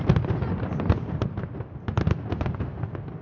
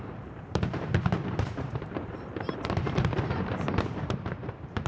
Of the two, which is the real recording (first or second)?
first